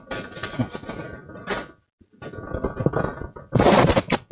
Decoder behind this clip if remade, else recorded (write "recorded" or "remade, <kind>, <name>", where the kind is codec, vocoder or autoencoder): recorded